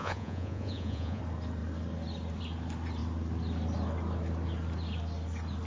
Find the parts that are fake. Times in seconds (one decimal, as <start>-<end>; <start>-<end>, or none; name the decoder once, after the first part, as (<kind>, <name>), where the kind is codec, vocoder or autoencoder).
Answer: 0.0-1.2 (vocoder, Vocos)